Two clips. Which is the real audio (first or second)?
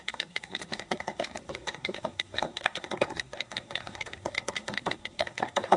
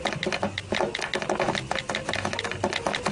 second